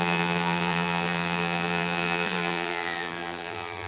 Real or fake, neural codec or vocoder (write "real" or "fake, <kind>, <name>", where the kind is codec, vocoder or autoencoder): fake, vocoder, BigVGAN v2